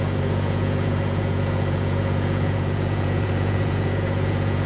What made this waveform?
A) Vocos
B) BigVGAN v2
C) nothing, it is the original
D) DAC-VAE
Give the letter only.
A